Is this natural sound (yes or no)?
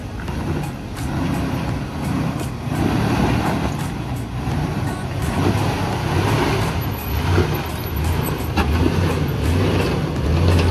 yes